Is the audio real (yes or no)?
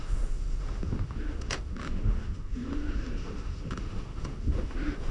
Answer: no